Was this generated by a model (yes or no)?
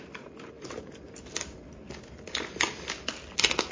no